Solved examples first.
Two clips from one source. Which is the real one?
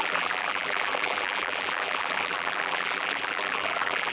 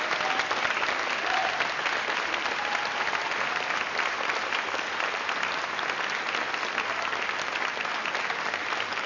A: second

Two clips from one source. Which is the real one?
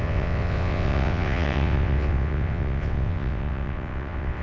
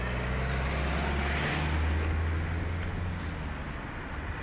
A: second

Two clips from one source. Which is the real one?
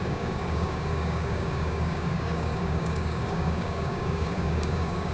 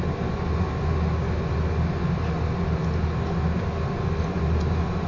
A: second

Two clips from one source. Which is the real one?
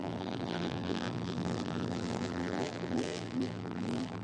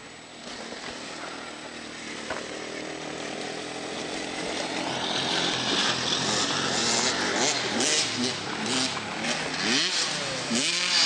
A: second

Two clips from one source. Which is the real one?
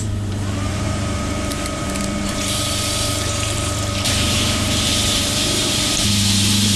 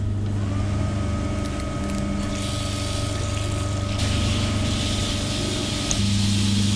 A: second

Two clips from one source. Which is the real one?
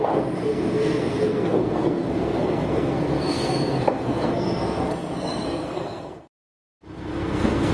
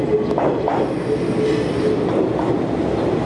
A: second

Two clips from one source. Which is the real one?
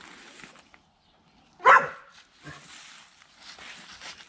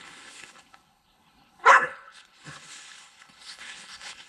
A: first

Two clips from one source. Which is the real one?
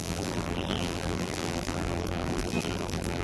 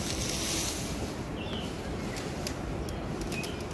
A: second